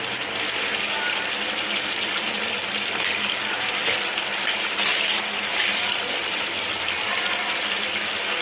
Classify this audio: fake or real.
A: real